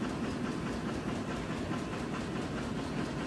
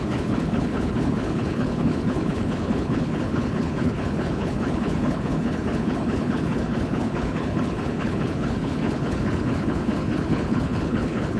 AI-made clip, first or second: second